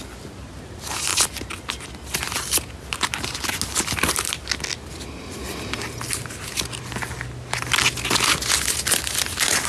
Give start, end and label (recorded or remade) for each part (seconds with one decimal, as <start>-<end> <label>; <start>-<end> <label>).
0.0-9.7 recorded